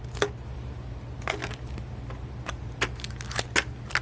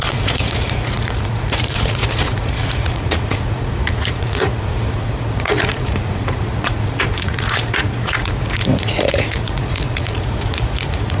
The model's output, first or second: second